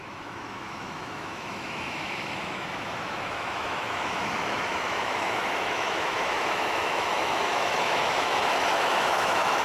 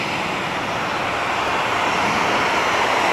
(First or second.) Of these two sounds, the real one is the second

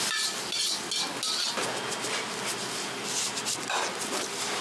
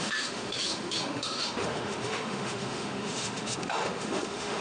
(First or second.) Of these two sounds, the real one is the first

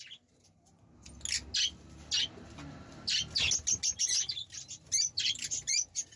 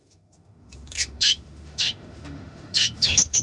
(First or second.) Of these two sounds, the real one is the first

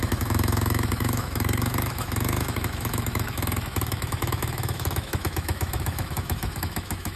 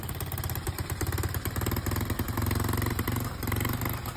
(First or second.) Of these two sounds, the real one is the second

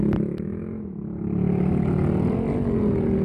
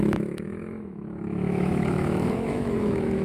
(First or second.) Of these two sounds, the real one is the first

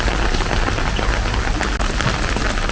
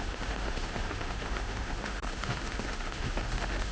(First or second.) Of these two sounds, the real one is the first